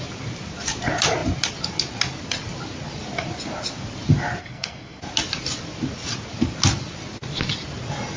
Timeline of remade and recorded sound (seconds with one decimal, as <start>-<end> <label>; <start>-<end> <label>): 0.0-4.4 recorded; 4.4-5.0 remade; 5.0-8.2 recorded